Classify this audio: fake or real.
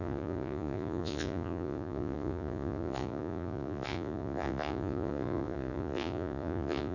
fake